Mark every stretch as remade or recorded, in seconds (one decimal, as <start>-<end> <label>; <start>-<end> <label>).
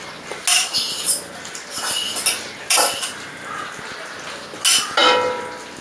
0.0-5.8 recorded